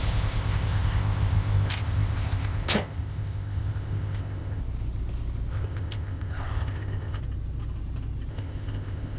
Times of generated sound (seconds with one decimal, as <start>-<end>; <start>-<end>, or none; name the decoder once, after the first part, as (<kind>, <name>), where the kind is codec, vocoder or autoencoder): 0.0-4.6 (codec, ZipCodec); 5.5-7.2; 8.3-9.2